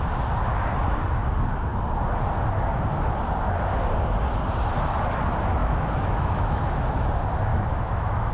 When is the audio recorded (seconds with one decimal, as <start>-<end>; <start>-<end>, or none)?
0.0-5.6; 6.6-7.5